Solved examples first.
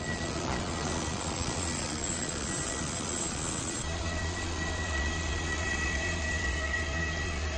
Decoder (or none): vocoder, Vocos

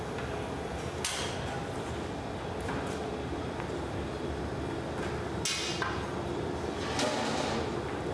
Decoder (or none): none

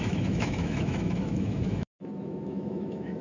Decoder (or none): autoencoder, DAC-VAE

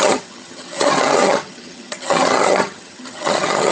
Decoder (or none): vocoder, HiFi-GAN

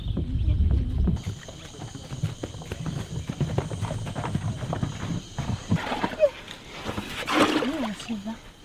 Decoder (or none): none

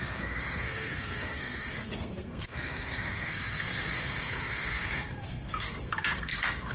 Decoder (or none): codec, SNAC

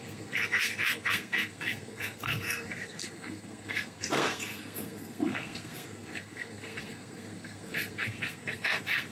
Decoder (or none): codec, SNAC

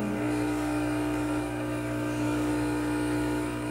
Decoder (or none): codec, DAC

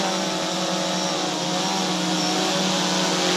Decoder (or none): none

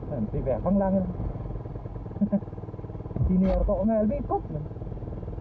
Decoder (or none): none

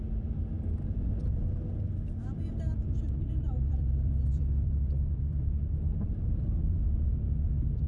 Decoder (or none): vocoder, BigVGAN v2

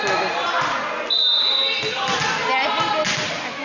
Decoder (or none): none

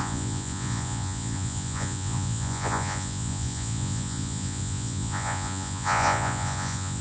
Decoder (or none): vocoder, Vocos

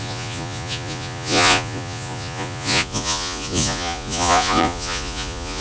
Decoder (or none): vocoder, Vocos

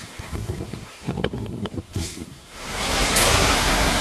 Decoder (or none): codec, SNAC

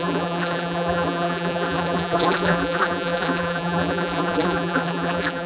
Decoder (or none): vocoder, BigVGAN v2